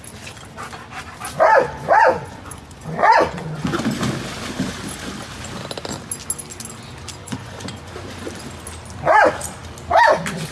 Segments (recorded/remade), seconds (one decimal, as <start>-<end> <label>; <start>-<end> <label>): 0.0-1.6 recorded; 1.6-3.8 remade; 3.8-7.2 recorded; 7.2-7.9 remade; 7.9-10.5 recorded